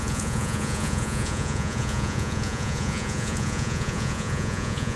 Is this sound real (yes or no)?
no